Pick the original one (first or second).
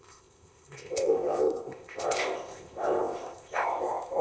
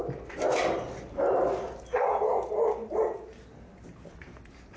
second